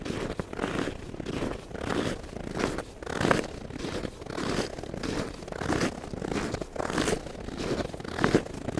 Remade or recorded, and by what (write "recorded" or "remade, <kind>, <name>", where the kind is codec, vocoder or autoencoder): recorded